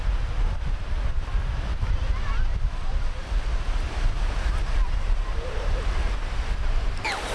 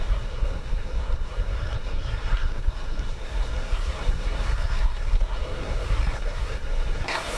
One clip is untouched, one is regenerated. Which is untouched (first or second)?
first